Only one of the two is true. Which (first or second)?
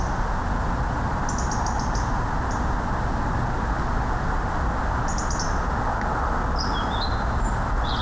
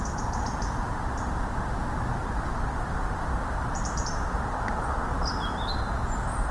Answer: first